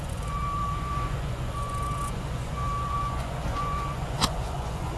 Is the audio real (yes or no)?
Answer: no